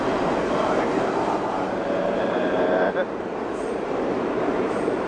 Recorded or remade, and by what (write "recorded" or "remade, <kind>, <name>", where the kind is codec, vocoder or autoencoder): remade, vocoder, BigVGAN v2